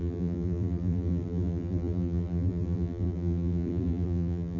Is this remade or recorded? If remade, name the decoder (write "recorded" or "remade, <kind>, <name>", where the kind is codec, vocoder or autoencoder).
remade, vocoder, BigVGAN v2